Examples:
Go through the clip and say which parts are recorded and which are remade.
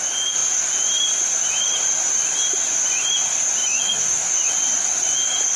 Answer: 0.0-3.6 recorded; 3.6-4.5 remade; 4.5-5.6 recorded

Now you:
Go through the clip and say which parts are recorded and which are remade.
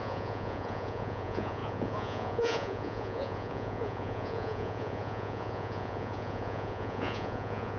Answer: 0.0-7.8 remade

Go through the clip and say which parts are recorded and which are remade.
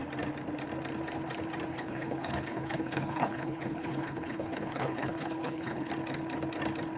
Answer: 0.0-1.7 recorded; 1.7-5.9 remade; 5.9-7.0 recorded